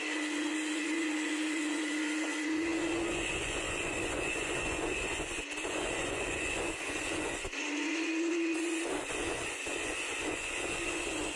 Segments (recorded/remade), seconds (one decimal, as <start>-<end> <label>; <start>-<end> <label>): 0.0-11.4 remade